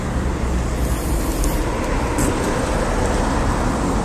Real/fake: real